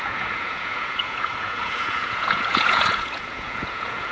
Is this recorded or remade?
remade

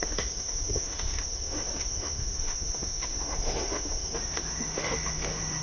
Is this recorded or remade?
remade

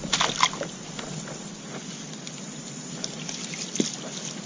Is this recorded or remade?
recorded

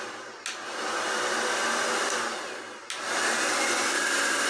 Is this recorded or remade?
recorded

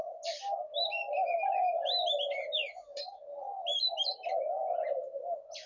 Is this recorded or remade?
recorded